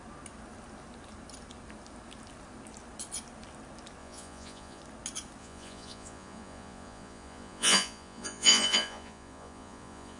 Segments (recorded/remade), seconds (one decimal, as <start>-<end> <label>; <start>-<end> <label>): 0.0-4.0 recorded; 4.0-4.8 remade; 4.8-5.4 recorded; 5.4-10.2 remade